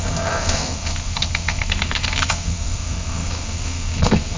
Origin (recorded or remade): remade